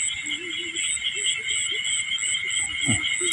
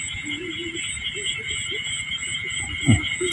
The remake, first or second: second